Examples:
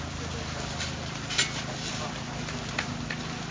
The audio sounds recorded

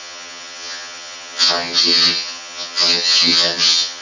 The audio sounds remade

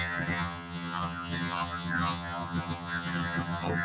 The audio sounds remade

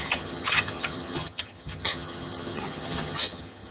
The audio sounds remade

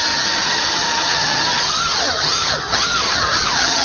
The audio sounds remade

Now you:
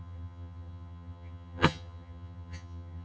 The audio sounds remade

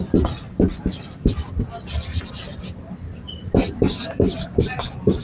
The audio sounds recorded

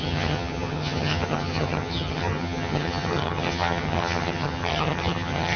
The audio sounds remade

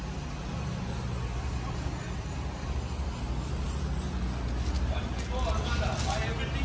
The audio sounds recorded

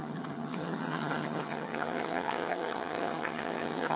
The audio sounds remade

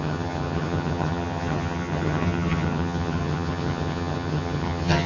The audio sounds remade